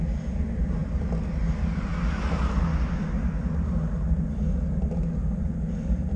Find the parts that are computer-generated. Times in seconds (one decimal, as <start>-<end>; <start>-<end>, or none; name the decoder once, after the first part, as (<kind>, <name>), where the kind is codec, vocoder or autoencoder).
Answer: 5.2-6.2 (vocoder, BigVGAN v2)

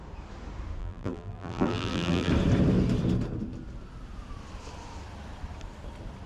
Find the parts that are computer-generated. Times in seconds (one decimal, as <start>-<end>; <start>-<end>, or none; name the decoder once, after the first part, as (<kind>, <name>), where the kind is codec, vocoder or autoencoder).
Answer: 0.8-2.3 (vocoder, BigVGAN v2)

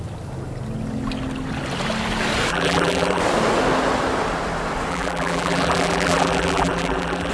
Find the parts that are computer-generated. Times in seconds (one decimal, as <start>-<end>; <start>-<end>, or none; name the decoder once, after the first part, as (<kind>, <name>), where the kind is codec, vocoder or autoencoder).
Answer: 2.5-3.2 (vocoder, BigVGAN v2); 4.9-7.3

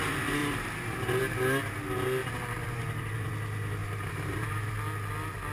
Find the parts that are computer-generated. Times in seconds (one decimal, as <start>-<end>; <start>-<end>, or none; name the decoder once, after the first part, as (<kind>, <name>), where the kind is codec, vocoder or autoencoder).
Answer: 0.4-1.2 (vocoder, BigVGAN v2); 2.2-3.3; 3.8-4.7

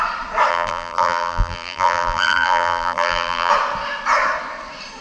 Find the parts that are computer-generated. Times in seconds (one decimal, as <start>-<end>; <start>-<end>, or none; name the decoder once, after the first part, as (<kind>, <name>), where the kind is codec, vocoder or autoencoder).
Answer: 0.5-3.5 (vocoder, BigVGAN v2)

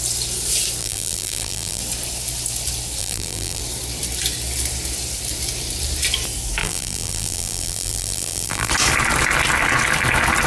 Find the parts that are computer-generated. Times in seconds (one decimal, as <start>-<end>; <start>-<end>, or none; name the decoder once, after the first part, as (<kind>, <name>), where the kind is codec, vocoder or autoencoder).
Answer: 0.8-1.8 (vocoder, BigVGAN v2); 3.0-3.6; 6.6-8.7

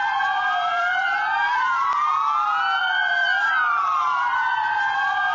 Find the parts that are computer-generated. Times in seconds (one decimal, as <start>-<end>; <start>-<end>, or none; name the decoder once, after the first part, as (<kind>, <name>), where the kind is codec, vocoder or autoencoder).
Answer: 0.0-2.1 (vocoder, BigVGAN v2); 2.8-5.3